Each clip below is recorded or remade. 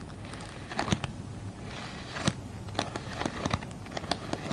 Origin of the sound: recorded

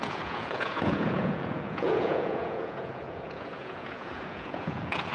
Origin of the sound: remade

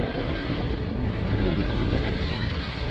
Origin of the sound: remade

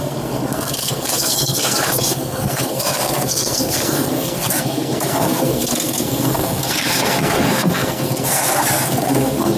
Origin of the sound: remade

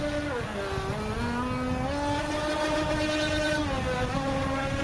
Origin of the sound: recorded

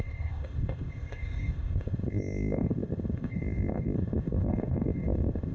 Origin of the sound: remade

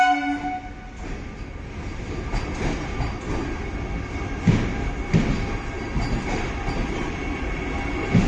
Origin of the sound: recorded